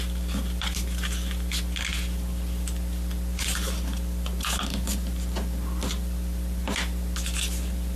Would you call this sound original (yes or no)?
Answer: yes